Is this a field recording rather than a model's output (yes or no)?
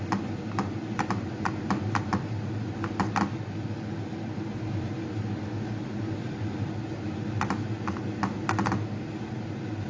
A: yes